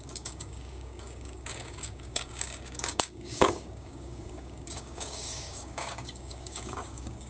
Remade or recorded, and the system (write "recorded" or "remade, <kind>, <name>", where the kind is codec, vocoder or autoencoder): remade, codec, DAC